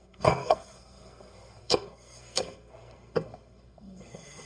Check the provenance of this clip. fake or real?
fake